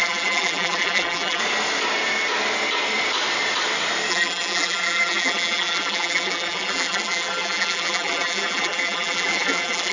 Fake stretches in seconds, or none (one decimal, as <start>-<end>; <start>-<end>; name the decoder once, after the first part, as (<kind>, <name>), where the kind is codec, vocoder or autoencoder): 0.0-1.4 (vocoder, BigVGAN v2); 4.1-9.9